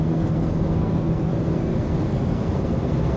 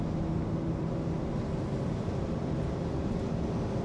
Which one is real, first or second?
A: second